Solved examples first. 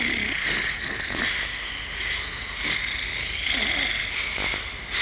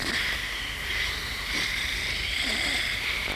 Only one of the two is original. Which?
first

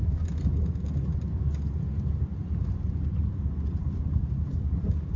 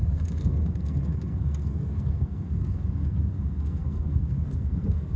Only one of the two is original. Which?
first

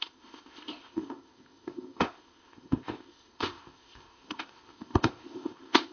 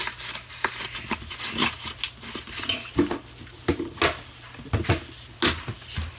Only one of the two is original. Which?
second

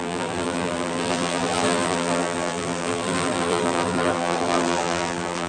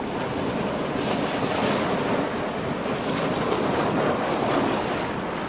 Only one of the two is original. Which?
second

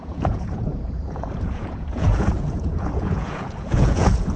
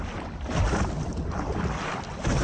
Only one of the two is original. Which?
second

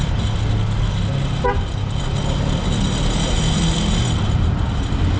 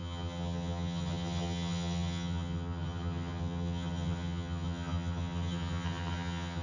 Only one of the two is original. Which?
first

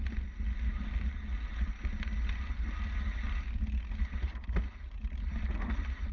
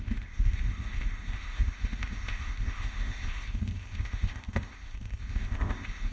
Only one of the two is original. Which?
first